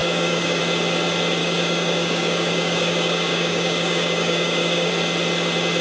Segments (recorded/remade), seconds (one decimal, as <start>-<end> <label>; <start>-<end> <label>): 0.0-0.6 remade; 0.6-1.4 recorded; 1.4-4.9 remade; 4.9-5.8 recorded